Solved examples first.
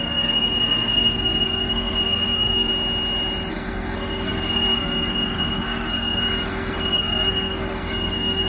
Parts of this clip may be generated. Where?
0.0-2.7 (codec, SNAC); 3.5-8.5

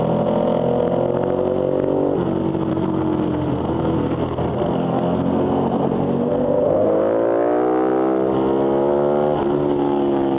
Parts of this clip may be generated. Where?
2.7-7.0 (codec, SNAC)

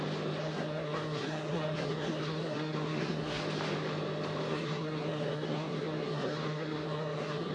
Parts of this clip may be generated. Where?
0.4-3.4 (codec, SNAC); 4.5-7.5

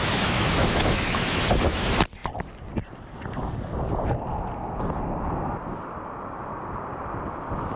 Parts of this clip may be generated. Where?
0.0-1.4 (autoencoder, DAC-VAE)